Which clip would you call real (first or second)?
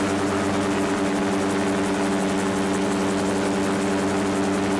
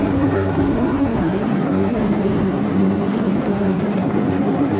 first